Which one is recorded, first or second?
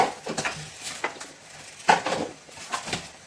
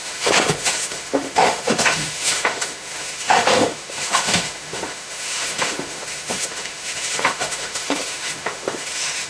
first